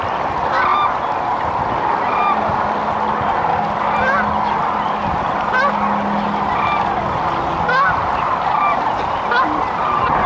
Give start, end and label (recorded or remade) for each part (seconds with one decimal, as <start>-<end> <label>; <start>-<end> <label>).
0.0-10.3 recorded